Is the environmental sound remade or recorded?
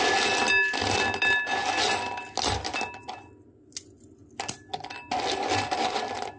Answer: recorded